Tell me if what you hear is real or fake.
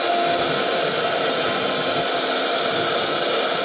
real